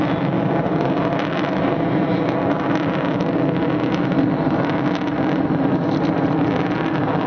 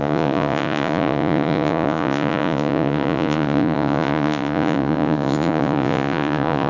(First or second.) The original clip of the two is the first